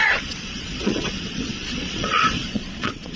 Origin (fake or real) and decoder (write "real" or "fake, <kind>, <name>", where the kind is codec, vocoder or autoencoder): fake, vocoder, Vocos